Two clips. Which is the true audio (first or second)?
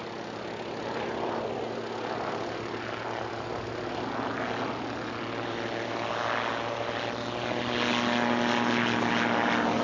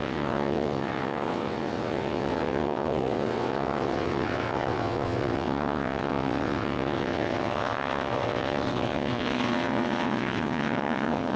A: first